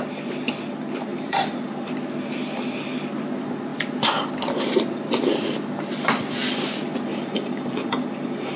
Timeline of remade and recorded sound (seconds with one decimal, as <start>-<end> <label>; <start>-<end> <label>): 0.0-1.1 recorded; 1.1-1.9 remade; 1.9-7.1 recorded; 7.1-8.6 remade